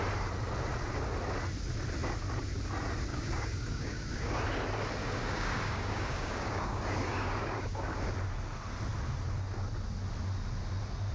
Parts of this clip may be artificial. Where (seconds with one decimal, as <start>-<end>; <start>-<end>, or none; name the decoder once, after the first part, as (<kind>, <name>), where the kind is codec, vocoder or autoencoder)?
3.1-4.4 (codec, DAC); 5.0-8.0